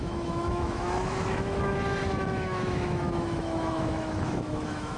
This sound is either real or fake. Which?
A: fake